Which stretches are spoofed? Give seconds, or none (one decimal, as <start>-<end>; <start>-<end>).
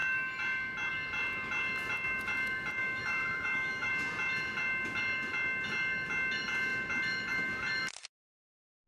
2.8-3.9